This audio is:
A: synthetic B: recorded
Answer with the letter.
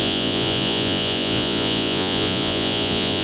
A